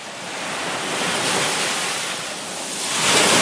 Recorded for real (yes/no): yes